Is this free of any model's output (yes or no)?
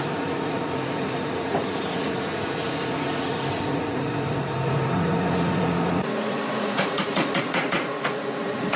no